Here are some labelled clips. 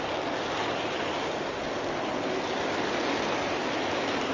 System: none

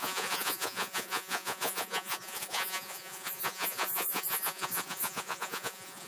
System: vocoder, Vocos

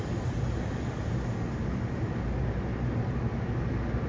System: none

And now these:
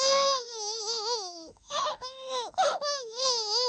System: autoencoder, DAC-VAE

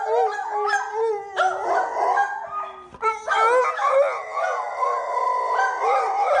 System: none